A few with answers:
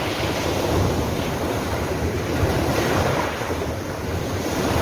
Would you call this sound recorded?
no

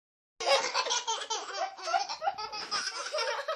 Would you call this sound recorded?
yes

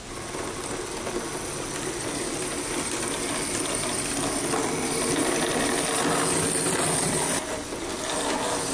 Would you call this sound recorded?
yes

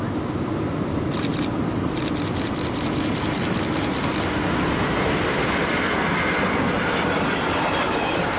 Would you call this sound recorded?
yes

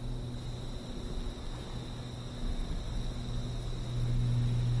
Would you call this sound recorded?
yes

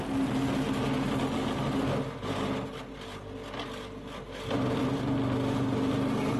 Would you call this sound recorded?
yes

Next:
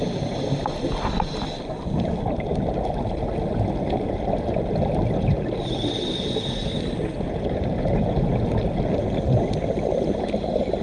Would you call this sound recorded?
yes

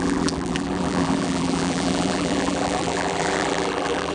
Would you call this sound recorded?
no